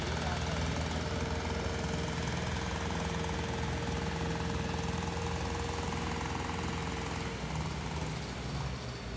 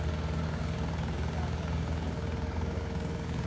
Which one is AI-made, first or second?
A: second